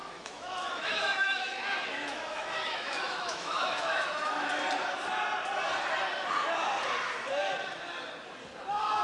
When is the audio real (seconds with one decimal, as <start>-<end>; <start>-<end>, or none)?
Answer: 4.5-9.0